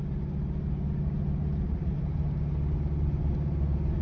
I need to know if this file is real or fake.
real